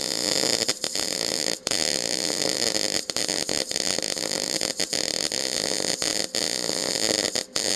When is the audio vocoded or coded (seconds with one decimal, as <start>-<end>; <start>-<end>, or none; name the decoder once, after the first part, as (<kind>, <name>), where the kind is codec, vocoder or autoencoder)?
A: 0.7-5.4 (vocoder, BigVGAN v2)